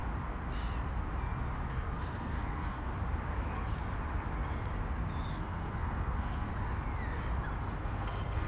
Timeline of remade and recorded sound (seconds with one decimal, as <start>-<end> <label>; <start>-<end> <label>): 0.0-1.7 recorded; 1.7-2.9 remade; 2.9-5.3 recorded; 5.3-6.5 remade; 6.5-7.8 recorded; 7.8-8.5 remade